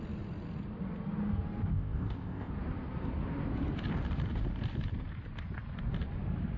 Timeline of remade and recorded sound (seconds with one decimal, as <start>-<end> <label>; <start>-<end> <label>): 0.0-1.7 recorded; 1.7-2.5 remade; 2.5-6.6 recorded